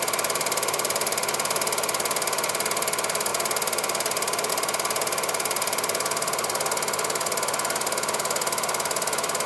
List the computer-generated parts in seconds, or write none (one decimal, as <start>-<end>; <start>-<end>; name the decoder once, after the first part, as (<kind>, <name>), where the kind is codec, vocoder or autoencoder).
none